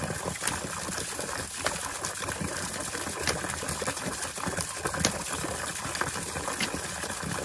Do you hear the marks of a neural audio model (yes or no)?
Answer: no